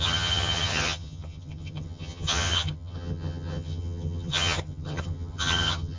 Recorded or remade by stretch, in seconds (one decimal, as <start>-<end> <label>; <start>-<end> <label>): 0.0-6.0 remade